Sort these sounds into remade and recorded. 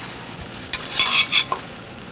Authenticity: remade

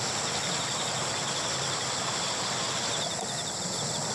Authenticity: recorded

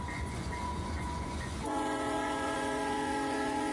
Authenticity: remade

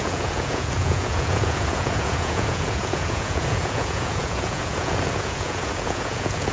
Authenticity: remade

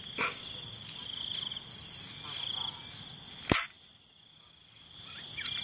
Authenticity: recorded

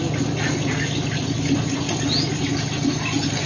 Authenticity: recorded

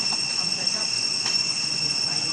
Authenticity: remade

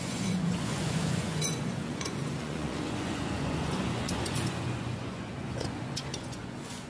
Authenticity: remade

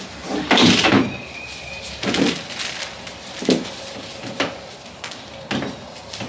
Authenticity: recorded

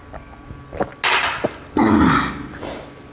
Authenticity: recorded